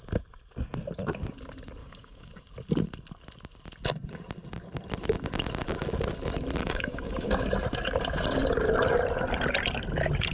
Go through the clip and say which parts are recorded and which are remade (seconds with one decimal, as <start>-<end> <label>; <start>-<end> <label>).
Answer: 0.0-1.8 recorded; 1.8-2.3 remade; 2.3-6.6 recorded; 6.6-7.5 remade; 7.5-10.3 recorded

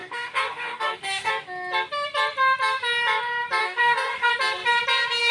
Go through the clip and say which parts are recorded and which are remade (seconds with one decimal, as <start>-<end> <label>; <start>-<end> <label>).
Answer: 0.0-1.3 remade; 1.3-3.6 recorded; 3.6-4.3 remade; 4.3-5.3 recorded

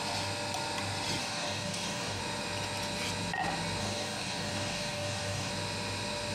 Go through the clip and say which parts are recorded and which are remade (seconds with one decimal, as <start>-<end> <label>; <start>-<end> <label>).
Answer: 0.0-1.2 recorded; 1.2-2.2 remade; 2.2-3.8 recorded; 3.8-5.5 remade; 5.5-6.3 recorded

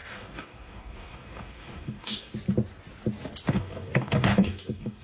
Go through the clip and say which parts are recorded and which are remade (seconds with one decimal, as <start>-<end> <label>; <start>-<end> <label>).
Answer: 0.0-2.3 remade; 2.3-3.5 recorded; 3.5-5.0 remade

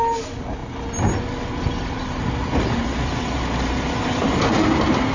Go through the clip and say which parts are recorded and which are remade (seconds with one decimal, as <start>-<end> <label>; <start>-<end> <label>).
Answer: 0.0-5.1 recorded